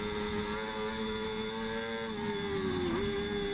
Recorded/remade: recorded